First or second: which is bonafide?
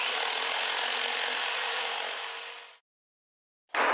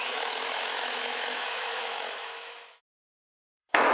first